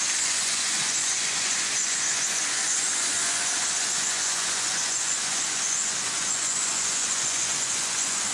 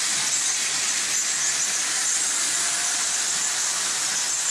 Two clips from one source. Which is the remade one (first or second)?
first